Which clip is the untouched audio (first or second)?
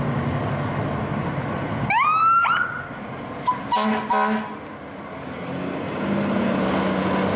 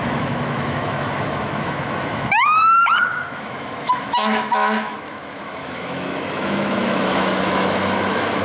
first